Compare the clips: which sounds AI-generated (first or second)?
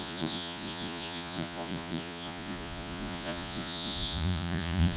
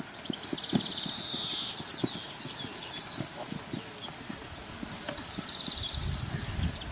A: first